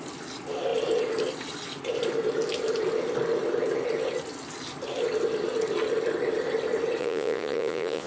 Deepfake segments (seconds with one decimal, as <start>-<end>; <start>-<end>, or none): 7.0-8.1